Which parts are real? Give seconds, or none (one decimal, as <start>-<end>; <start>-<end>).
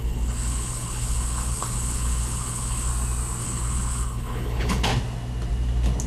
2.9-3.4; 4.9-6.1